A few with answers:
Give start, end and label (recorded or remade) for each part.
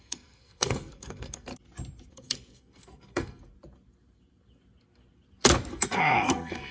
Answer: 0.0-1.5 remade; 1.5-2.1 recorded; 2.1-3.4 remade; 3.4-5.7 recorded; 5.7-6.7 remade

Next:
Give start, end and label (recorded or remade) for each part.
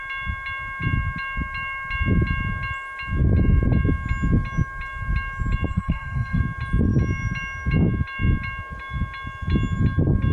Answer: 0.0-5.7 recorded; 5.7-6.4 remade; 6.4-10.3 recorded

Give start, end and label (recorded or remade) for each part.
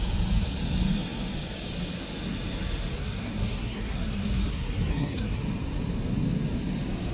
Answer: 0.0-3.0 recorded; 3.0-5.4 remade; 5.4-7.1 recorded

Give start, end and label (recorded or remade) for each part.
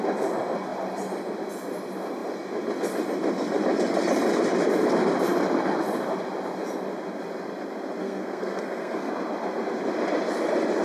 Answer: 0.0-8.0 recorded; 8.0-9.1 remade; 9.1-10.8 recorded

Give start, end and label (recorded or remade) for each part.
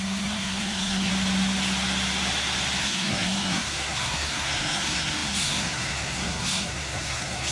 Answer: 0.0-1.1 remade; 1.1-2.8 recorded; 2.8-7.5 remade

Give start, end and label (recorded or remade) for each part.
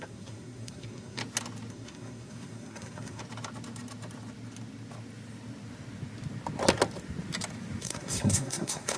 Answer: 0.0-1.2 remade; 1.2-1.7 recorded; 1.7-3.2 remade; 3.2-7.8 recorded; 7.8-9.0 remade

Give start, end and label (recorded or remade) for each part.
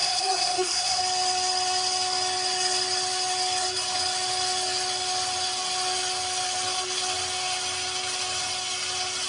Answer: 0.0-1.0 remade; 1.0-9.3 recorded